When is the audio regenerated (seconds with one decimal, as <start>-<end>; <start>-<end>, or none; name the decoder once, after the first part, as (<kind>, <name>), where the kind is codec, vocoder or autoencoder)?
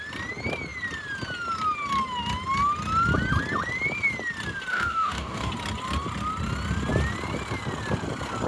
4.7-5.5 (codec, DAC)